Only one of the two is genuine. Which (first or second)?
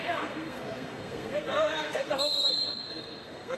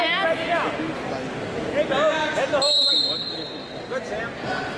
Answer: second